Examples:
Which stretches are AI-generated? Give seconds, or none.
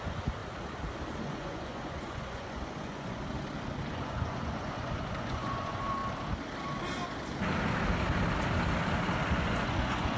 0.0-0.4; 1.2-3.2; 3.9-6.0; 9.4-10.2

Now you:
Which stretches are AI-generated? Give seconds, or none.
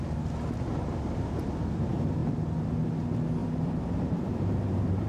3.4-5.1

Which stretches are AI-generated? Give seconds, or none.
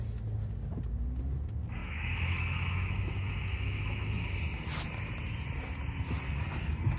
1.8-4.4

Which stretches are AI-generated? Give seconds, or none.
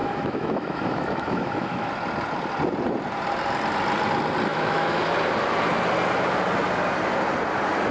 0.0-1.9; 4.5-5.1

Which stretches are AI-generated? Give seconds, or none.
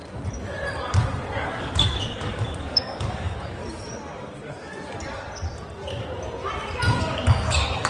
1.6-3.6; 7.0-7.9